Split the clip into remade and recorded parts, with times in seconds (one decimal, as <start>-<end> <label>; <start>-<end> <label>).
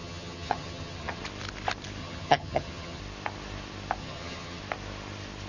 0.0-1.2 remade; 1.2-2.0 recorded; 2.0-3.0 remade; 3.0-4.0 recorded; 4.0-4.6 remade; 4.6-5.5 recorded